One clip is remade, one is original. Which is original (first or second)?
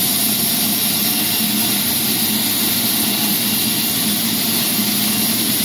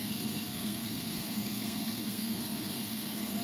first